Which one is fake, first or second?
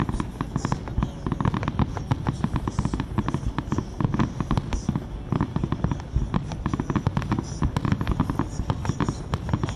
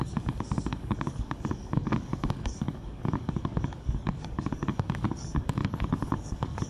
second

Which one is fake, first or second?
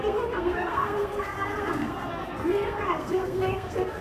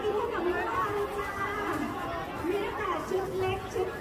first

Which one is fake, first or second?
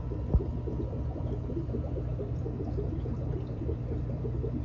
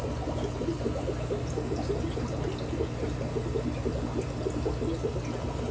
first